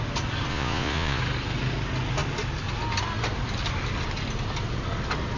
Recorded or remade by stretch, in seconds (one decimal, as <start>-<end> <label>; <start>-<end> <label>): 0.0-0.5 recorded; 0.5-1.2 remade; 1.2-5.4 recorded